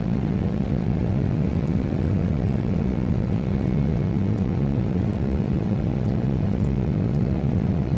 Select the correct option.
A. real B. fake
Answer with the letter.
B